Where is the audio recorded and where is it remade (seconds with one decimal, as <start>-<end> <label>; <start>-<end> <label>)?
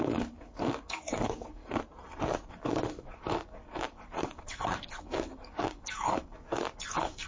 0.0-1.6 remade; 1.6-2.5 recorded; 2.5-7.3 remade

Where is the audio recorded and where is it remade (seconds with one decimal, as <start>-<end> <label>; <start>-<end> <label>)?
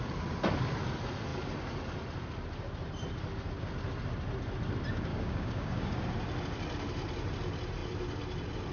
0.0-5.1 recorded; 5.1-6.0 remade; 6.0-8.7 recorded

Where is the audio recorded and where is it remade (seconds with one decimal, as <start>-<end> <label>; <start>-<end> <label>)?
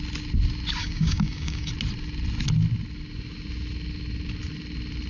0.0-0.8 recorded; 0.8-1.7 remade; 1.7-5.1 recorded